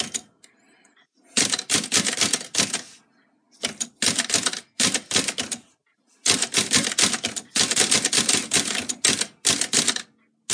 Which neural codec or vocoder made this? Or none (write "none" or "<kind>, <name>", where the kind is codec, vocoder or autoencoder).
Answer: none